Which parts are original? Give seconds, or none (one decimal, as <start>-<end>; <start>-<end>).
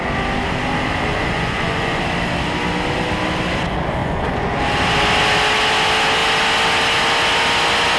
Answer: 0.0-1.1; 2.0-4.0; 4.6-8.0